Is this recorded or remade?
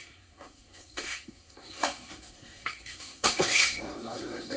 remade